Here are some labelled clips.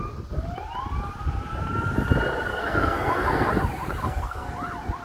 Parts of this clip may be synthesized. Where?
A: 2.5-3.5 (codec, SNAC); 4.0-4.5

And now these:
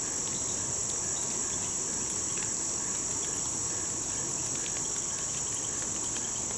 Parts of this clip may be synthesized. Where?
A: 0.8-4.2 (vocoder, BigVGAN v2)

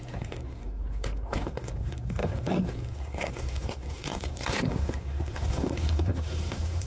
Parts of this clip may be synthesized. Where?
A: 0.0-6.9 (codec, SNAC)

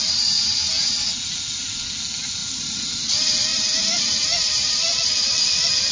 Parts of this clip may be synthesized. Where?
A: 0.0-0.9 (vocoder, BigVGAN v2); 2.4-2.9; 3.5-5.1

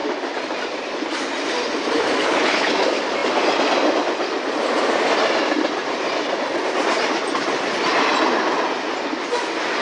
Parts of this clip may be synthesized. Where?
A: 2.2-2.7 (codec, HILCodec)

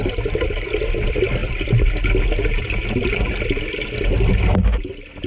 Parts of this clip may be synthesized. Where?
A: none

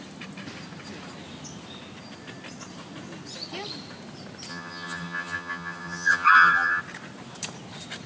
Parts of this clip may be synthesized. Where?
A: 4.5-6.8 (vocoder, HiFi-GAN)